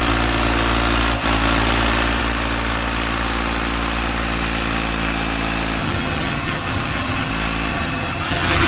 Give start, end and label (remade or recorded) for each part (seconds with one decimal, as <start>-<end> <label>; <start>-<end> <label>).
0.0-5.8 recorded; 5.8-7.3 remade; 7.3-7.7 recorded; 7.7-8.7 remade